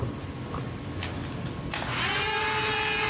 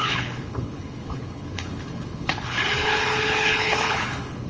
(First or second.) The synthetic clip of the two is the second